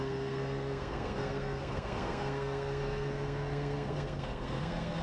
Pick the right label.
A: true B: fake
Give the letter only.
B